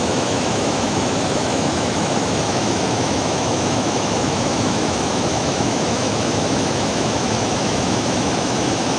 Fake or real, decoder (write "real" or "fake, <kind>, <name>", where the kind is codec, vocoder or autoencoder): fake, autoencoder, DAC-VAE